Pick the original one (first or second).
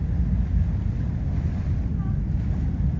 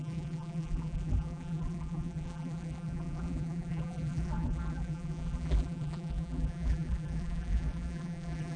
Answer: first